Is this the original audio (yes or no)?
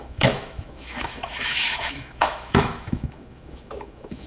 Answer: no